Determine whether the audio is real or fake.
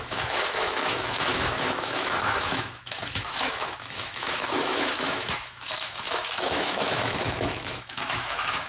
fake